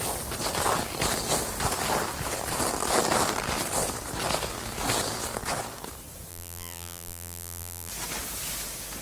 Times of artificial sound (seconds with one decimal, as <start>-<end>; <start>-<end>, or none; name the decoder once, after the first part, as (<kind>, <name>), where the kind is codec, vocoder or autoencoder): 6.3-7.9 (vocoder, BigVGAN v2)